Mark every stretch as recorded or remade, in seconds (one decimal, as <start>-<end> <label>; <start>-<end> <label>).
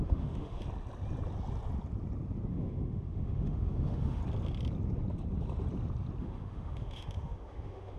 0.0-0.6 remade; 0.6-2.5 recorded; 2.5-4.2 remade; 4.2-6.2 recorded; 6.2-8.0 remade